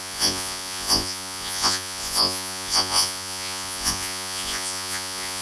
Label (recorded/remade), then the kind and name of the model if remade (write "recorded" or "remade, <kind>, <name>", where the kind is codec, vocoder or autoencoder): remade, vocoder, Vocos